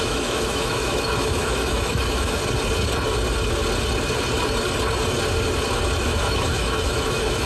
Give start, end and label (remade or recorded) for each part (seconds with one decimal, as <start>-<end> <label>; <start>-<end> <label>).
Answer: 0.0-2.4 remade; 2.4-6.0 recorded; 6.0-7.5 remade